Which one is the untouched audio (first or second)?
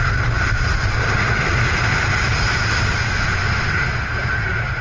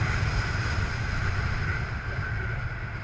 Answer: first